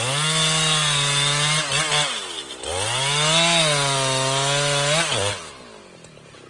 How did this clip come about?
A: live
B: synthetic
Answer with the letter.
A